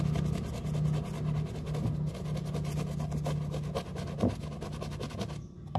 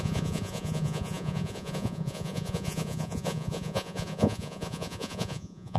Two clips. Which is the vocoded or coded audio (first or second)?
second